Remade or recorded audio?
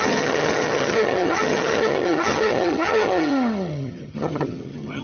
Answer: remade